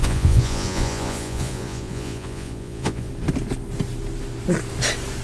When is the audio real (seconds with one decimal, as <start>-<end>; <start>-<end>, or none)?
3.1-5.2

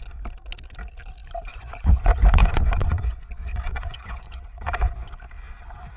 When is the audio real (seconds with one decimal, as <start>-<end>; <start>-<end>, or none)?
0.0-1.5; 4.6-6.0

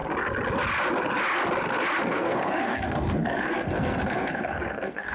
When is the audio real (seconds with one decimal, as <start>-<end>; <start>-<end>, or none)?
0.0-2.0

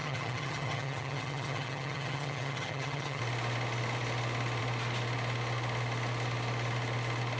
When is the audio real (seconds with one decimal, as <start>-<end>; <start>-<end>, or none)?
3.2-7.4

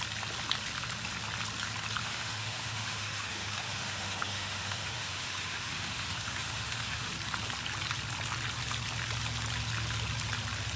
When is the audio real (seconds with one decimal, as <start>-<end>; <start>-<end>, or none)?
0.0-2.0; 7.1-10.8

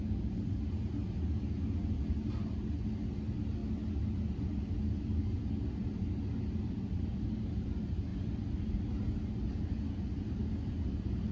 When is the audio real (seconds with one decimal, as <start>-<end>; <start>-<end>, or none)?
0.0-11.3

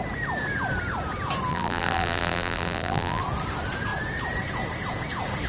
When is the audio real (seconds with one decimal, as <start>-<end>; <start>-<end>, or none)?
0.0-1.5; 3.2-5.5

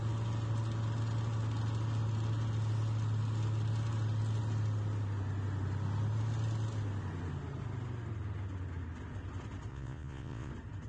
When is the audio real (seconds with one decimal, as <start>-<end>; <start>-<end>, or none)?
0.0-9.7; 10.5-10.9